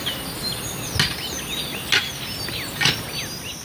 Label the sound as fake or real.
real